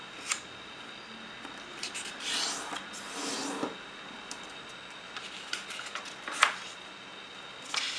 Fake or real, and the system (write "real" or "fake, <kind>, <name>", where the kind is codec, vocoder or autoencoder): real